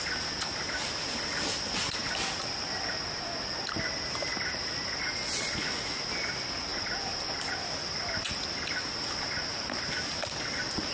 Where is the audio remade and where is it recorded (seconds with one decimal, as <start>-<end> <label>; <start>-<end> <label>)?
0.0-10.9 recorded